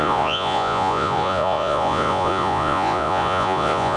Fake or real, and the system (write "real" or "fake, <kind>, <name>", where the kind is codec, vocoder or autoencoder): fake, vocoder, Vocos